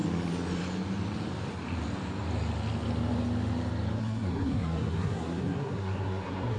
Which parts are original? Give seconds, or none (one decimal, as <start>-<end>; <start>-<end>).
0.0-4.0